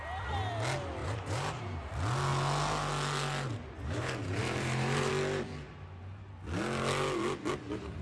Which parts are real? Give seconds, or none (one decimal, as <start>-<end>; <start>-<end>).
0.0-1.0; 1.9-3.6; 5.1-8.0